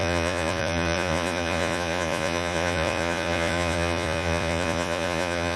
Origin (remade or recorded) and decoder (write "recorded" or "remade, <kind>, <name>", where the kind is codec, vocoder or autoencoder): remade, vocoder, Vocos